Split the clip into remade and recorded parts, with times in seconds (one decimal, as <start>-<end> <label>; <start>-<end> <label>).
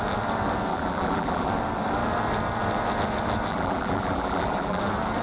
0.0-0.7 recorded; 0.7-1.5 remade; 1.5-3.5 recorded; 3.5-4.8 remade; 4.8-5.2 recorded